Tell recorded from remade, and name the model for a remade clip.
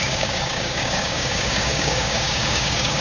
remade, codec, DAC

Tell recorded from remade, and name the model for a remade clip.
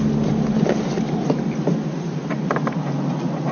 recorded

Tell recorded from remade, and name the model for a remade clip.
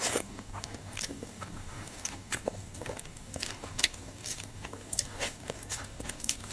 remade, codec, DAC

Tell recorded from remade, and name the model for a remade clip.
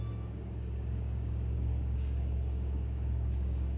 remade, codec, DAC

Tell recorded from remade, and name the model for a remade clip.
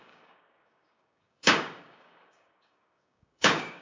remade, codec, DAC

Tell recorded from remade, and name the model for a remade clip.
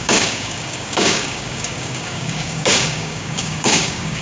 remade, codec, DAC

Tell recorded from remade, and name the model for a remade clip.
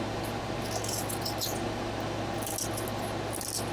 recorded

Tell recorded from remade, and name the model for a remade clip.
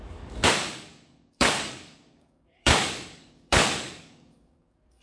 remade, codec, DAC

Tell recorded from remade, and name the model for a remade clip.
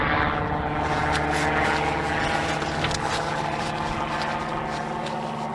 recorded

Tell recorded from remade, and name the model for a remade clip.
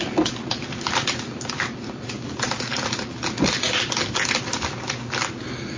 recorded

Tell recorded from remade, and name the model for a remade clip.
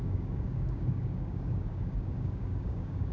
remade, codec, DAC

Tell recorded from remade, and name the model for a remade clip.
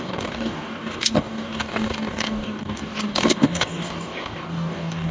remade, codec, DAC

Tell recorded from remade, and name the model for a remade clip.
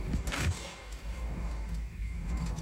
remade, codec, DAC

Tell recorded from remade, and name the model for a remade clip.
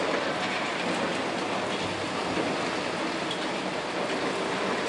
recorded